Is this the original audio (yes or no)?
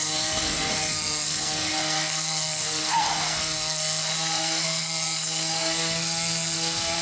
no